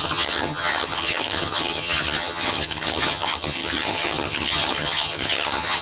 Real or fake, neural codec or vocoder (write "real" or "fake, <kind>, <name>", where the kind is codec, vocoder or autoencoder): fake, vocoder, HiFi-GAN